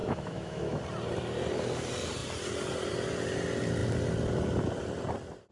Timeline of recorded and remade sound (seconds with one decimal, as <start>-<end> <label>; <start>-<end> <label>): 0.0-0.8 remade; 0.8-5.5 recorded